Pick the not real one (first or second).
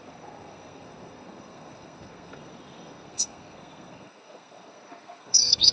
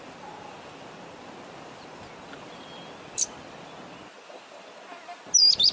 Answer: first